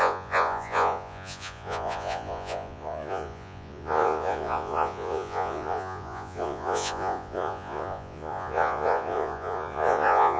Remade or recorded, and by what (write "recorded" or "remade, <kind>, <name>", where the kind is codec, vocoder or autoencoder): remade, vocoder, Vocos